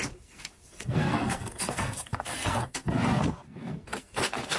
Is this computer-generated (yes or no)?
yes